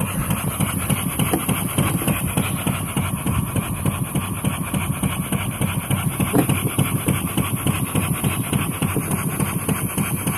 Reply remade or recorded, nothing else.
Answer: recorded